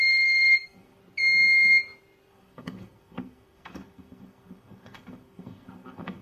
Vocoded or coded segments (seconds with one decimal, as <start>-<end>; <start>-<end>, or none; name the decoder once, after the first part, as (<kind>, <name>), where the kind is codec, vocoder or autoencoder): 0.0-1.0 (codec, SNAC); 2.3-6.2